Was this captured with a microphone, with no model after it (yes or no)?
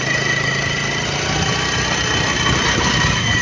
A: yes